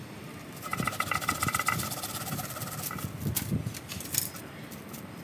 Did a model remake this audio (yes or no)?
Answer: yes